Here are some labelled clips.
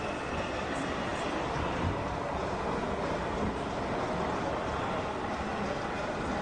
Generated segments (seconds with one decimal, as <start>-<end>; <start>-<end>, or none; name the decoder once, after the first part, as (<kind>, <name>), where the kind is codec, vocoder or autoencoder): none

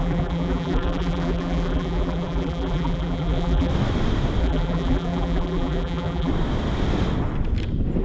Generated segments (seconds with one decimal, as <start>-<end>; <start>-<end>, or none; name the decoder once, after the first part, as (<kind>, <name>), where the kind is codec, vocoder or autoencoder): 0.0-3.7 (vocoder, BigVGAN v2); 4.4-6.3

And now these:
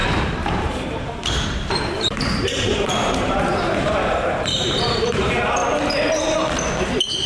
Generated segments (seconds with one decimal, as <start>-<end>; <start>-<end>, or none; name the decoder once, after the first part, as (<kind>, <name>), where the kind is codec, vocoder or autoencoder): 0.0-5.6 (vocoder, BigVGAN v2)

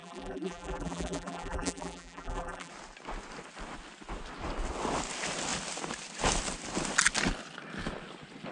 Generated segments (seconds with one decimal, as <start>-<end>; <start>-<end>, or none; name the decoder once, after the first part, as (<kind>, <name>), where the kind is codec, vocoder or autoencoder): 0.0-2.7 (vocoder, BigVGAN v2)

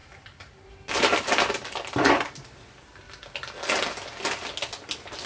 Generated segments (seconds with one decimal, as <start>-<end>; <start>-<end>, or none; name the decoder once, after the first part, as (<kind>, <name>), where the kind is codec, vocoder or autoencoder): 0.0-3.2 (vocoder, BigVGAN v2)

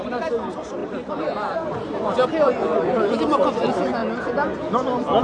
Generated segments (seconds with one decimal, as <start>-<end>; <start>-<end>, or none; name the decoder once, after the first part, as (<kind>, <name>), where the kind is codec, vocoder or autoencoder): 0.8-3.1 (vocoder, BigVGAN v2)